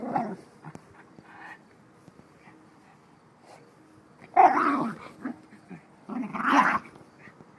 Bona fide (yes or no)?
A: yes